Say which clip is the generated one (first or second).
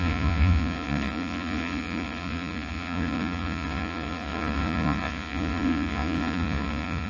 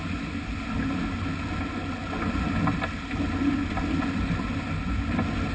first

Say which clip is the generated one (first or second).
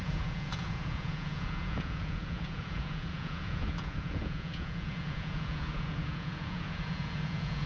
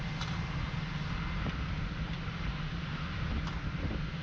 first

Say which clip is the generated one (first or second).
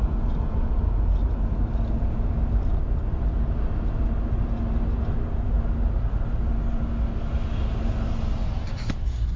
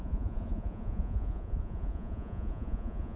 second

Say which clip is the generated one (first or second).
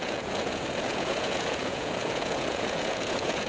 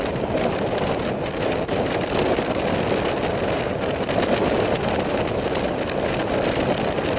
first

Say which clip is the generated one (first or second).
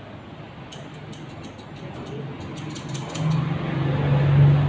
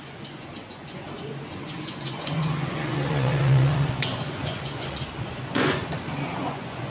second